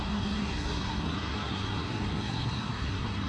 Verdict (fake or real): fake